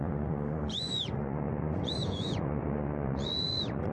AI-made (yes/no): yes